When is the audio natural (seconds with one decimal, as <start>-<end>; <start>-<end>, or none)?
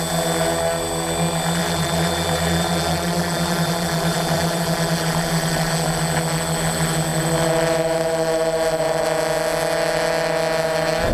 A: 0.0-1.6; 5.7-11.1